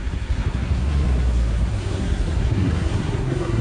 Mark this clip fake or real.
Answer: fake